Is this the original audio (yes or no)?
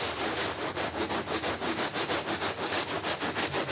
yes